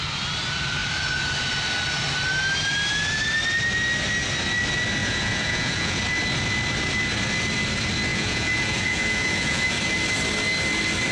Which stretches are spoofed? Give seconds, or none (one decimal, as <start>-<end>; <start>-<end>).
5.0-6.0; 8.1-9.8